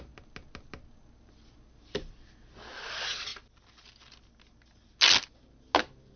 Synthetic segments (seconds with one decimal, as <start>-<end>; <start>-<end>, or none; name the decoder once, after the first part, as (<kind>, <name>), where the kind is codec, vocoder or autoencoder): none